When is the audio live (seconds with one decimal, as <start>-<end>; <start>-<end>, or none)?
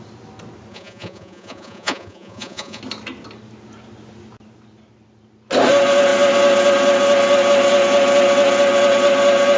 0.0-0.7; 2.8-9.6